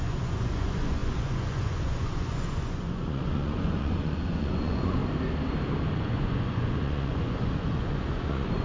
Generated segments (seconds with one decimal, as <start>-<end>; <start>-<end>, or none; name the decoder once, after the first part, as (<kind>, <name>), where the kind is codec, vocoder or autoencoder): 0.0-5.0 (vocoder, Vocos); 6.0-8.6